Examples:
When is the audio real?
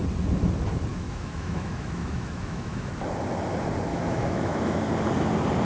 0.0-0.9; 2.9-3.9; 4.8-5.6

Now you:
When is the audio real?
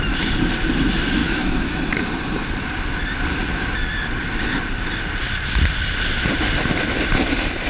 0.0-1.2; 1.9-7.7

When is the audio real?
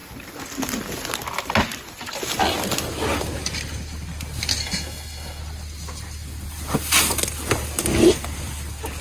0.0-4.6; 5.4-9.0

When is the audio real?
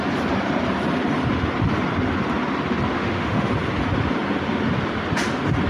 0.0-2.9; 3.5-5.7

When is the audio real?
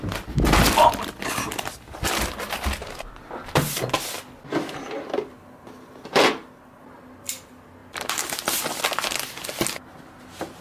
0.0-10.6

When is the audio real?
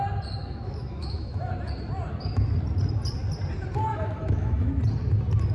0.0-0.4; 1.5-3.9; 4.8-5.5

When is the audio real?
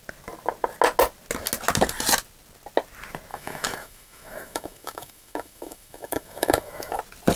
0.0-3.3; 7.0-7.4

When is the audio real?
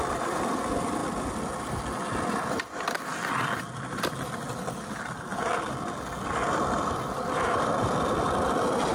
0.0-8.9